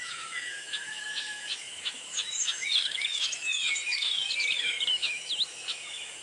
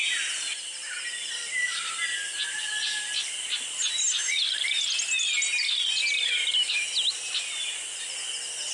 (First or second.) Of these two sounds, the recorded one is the second